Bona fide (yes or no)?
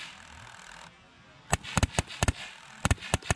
yes